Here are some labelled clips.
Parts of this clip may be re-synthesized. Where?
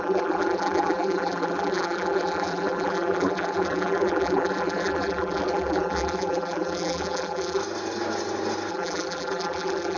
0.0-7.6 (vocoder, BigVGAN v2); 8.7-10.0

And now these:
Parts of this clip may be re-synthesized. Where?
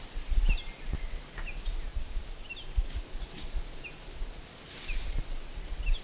1.9-3.2 (vocoder, BigVGAN v2)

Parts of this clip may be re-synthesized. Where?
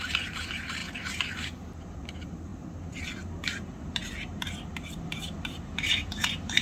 0.0-6.6 (vocoder, BigVGAN v2)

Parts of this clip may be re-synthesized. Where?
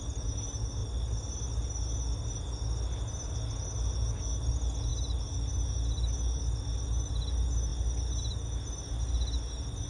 none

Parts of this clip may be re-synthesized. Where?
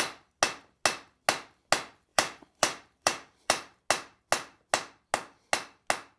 2.1-3.8 (vocoder, BigVGAN v2)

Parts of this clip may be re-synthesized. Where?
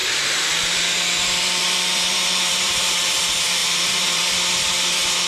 0.0-3.2 (vocoder, BigVGAN v2); 3.6-4.2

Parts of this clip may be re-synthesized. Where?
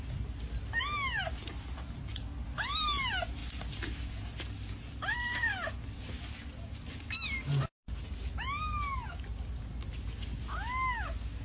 none